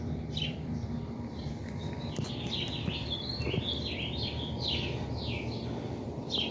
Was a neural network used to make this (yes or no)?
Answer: yes